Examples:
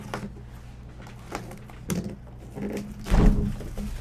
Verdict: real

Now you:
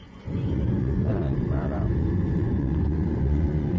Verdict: fake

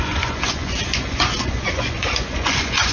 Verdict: fake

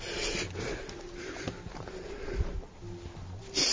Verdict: real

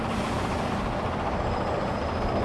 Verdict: real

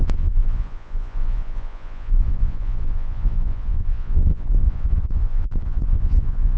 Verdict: fake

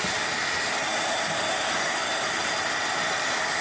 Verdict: real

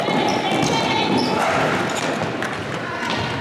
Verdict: real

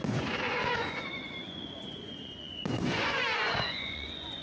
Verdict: fake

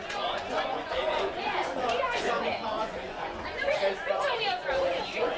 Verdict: fake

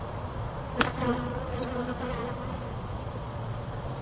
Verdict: fake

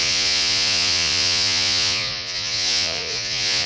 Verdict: fake